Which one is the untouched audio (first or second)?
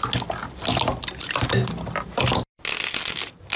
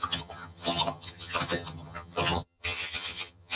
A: first